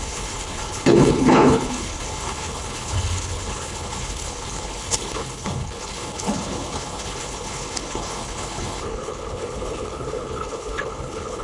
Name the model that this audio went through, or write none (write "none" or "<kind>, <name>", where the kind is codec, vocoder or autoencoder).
codec, HILCodec